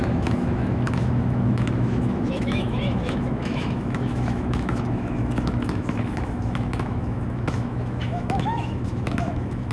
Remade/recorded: remade